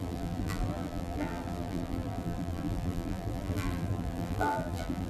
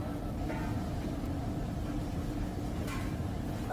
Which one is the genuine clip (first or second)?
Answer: second